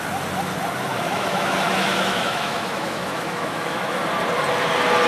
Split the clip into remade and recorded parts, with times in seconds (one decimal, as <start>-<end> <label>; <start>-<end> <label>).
0.0-0.9 recorded; 0.9-4.0 remade; 4.0-5.1 recorded